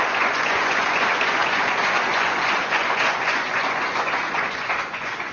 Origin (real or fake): fake